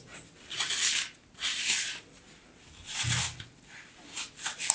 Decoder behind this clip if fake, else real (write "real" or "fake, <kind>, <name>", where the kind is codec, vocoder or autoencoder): real